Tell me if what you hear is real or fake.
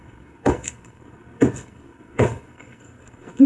fake